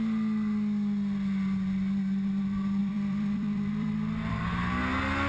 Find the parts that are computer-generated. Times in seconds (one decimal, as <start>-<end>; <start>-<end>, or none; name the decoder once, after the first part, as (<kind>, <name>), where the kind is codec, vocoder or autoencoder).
2.8-4.8 (vocoder, BigVGAN v2)